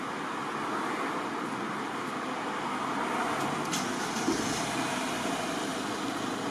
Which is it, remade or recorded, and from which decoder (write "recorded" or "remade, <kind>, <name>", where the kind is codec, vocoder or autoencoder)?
recorded